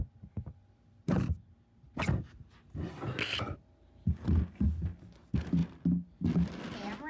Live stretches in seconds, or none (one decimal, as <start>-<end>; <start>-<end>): 0.0-7.1